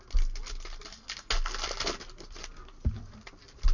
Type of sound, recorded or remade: recorded